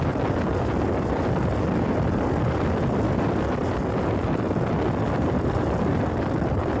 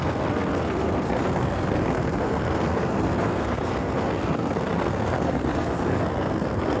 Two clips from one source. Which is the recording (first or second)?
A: first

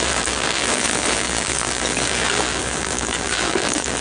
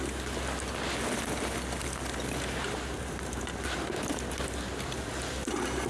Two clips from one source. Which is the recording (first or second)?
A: second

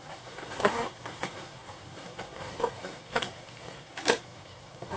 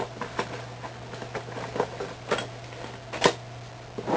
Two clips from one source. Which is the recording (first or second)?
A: second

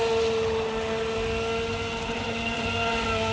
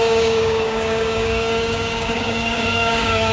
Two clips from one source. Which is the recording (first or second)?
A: first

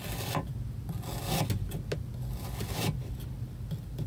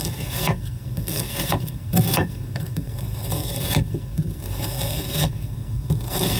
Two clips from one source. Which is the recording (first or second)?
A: first